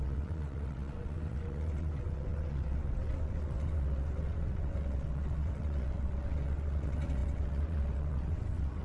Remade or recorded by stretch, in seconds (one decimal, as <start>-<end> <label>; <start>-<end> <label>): 0.0-8.8 remade